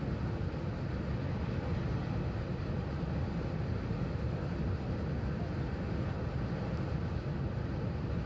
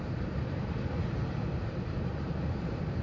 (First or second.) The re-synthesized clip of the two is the second